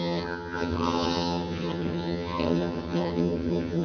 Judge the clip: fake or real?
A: fake